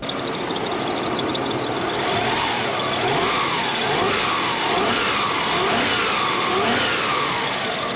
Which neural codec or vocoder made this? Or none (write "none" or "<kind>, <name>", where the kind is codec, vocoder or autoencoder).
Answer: none